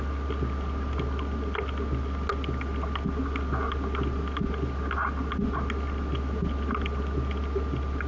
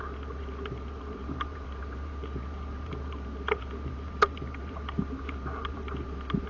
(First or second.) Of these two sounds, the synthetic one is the second